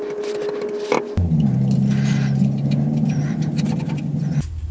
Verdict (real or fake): real